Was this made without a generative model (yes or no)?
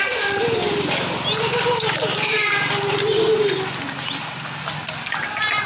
yes